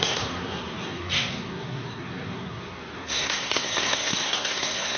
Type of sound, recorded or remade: remade